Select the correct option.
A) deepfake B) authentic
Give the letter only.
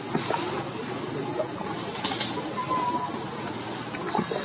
B